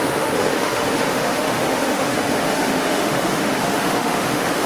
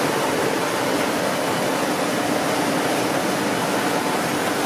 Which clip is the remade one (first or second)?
first